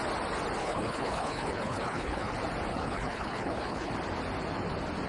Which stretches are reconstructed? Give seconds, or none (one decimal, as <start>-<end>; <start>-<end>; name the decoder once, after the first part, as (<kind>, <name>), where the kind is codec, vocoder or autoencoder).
0.6-2.3 (codec, HILCodec); 2.7-3.9